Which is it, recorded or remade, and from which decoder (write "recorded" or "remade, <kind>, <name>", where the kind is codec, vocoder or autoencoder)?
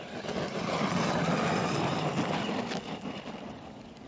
recorded